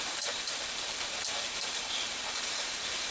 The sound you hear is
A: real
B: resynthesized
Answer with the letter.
B